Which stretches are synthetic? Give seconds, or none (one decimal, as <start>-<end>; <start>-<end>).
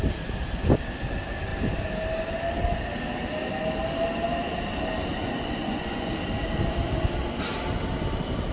5.1-6.1